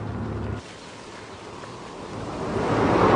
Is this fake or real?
real